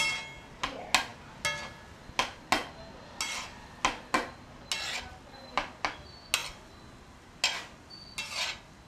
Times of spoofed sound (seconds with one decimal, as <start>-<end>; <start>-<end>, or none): none